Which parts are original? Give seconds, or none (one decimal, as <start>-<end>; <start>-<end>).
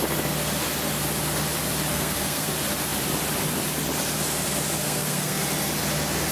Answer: 0.0-1.9; 2.5-4.8; 5.4-6.3